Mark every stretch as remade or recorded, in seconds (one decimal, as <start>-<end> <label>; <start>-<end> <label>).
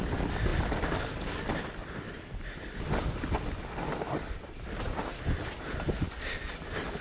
0.0-7.0 recorded